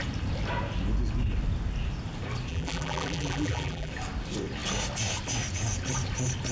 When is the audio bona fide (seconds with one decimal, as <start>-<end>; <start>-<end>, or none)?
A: 0.0-2.5; 3.9-6.5